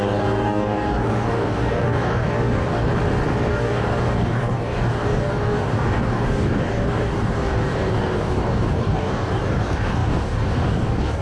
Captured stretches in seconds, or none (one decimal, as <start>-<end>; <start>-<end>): 2.9-3.5